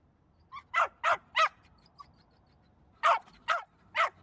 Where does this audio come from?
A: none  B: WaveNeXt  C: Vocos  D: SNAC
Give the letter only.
A